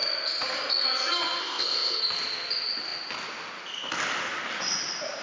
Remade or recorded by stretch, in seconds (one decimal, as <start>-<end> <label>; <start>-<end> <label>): 0.0-1.4 recorded; 1.4-2.0 remade; 2.0-5.2 recorded